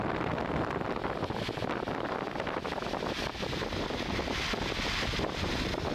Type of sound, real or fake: real